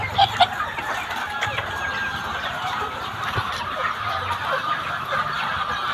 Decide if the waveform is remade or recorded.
recorded